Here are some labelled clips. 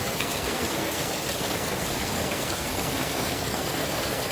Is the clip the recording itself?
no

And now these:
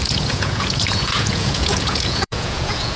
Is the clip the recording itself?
no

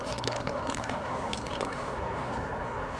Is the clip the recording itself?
no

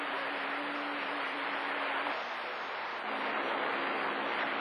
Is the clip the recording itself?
yes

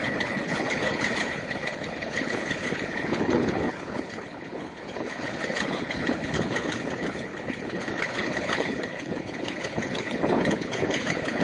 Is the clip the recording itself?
no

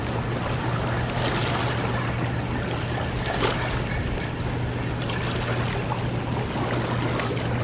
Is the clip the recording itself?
yes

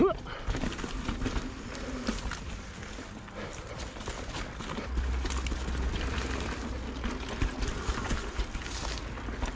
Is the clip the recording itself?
yes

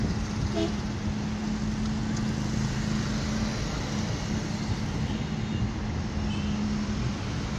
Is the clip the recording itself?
yes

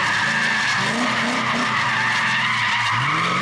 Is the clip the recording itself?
yes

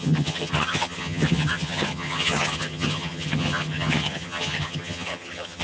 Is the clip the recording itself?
no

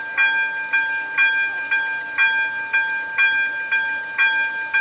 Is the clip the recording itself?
yes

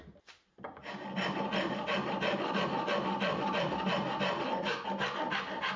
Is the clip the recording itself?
yes